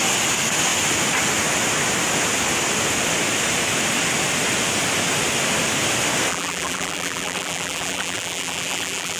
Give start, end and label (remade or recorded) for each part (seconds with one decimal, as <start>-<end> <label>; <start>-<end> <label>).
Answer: 0.0-6.3 recorded; 6.3-9.2 remade